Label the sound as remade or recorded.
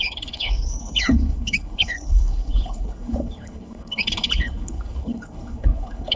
remade